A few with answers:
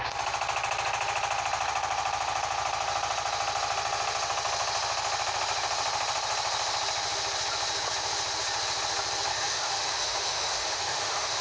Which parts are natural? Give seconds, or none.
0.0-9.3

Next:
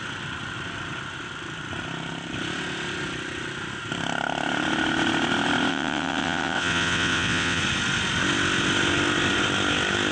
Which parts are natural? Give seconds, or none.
0.0-5.7; 7.6-10.1

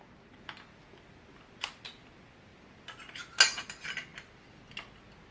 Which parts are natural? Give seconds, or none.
0.0-5.3

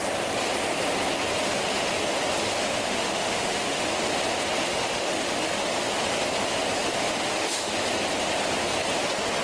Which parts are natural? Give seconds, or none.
0.0-2.6; 3.9-4.7; 5.7-6.8; 7.7-9.4

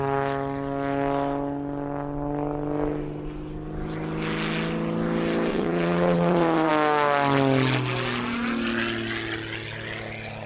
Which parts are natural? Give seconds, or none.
0.0-5.5; 6.7-10.5

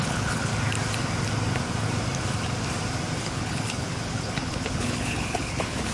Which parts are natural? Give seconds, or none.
0.5-3.2

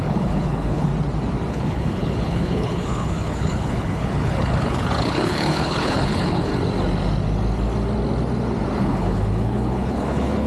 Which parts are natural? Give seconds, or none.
0.9-1.5; 6.5-8.8